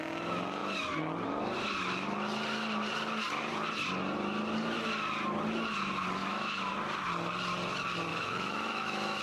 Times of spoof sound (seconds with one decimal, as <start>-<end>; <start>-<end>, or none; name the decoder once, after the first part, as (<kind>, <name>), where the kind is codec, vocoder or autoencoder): 6.2-6.7 (autoencoder, DAC-VAE); 8.1-9.2